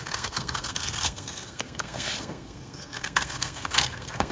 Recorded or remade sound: remade